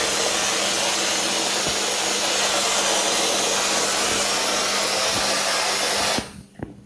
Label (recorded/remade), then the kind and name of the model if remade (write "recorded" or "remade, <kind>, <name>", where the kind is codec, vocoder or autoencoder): recorded